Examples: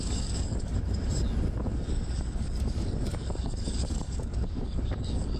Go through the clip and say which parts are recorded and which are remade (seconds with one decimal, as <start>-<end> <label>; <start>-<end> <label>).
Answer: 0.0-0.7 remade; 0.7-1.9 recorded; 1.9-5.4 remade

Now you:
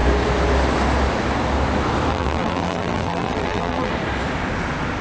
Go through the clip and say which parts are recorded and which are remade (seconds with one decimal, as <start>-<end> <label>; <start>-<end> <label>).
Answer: 0.0-2.1 recorded; 2.1-3.9 remade; 3.9-5.0 recorded

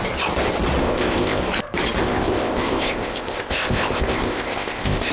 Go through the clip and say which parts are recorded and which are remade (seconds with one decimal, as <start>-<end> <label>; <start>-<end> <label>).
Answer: 0.0-0.8 recorded; 0.8-1.4 remade; 1.4-2.0 recorded; 2.0-5.1 remade

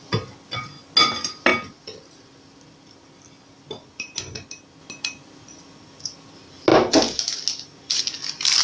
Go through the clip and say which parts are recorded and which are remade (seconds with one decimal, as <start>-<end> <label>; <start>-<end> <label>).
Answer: 0.0-8.6 recorded

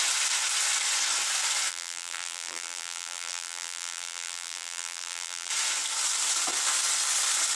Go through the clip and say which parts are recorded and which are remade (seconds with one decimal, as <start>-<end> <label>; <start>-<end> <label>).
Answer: 0.0-1.7 recorded; 1.7-5.5 remade; 5.5-7.5 recorded